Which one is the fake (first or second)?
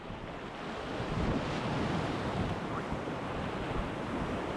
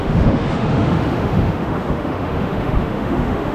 second